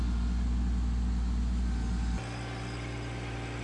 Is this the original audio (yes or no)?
yes